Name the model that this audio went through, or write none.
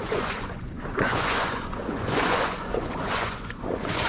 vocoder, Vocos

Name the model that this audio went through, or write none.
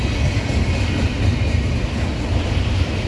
none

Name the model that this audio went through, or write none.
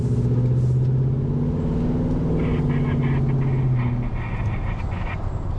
none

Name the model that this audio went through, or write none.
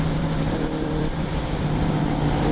vocoder, BigVGAN v2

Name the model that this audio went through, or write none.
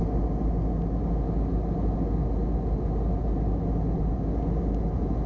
none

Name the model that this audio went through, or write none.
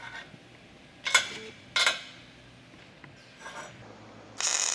none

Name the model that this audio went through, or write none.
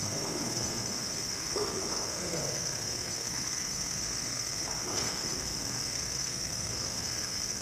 codec, SNAC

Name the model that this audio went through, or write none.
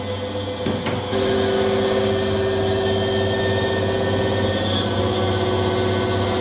none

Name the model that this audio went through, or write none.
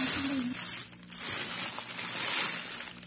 none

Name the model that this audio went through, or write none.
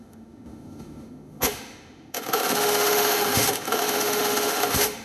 autoencoder, DAC-VAE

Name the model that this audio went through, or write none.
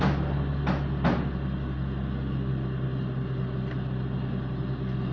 none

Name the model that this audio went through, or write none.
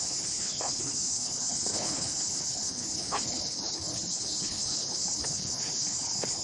codec, HILCodec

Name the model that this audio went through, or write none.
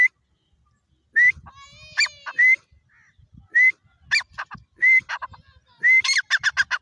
none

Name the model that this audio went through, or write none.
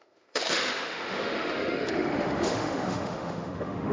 autoencoder, DAC-VAE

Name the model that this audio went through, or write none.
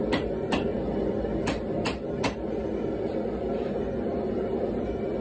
none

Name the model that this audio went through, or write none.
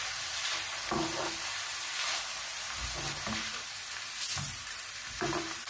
none